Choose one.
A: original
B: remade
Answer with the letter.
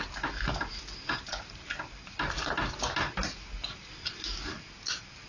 A